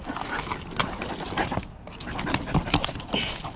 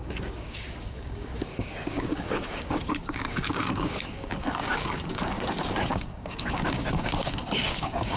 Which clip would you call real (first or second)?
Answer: first